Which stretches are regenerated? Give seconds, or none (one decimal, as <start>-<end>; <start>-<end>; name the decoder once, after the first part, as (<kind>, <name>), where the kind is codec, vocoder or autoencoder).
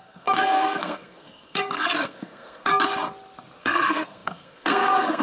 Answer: 0.0-2.7 (codec, SNAC); 3.6-5.2